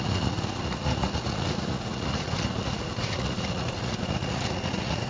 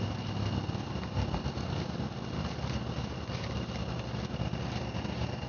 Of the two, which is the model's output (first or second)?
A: first